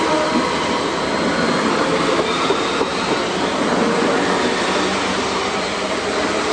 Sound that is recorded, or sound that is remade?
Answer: recorded